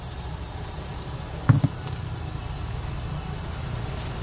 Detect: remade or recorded recorded